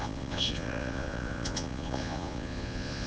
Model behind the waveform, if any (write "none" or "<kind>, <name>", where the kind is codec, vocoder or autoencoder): vocoder, Vocos